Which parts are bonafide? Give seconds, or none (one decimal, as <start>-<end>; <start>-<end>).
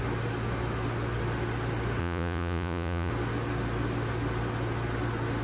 0.0-2.0; 3.1-5.4